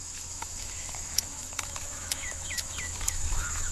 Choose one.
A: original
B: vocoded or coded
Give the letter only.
B